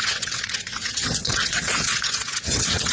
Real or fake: fake